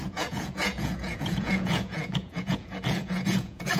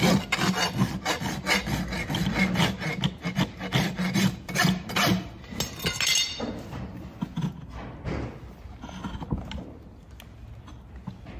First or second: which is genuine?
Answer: second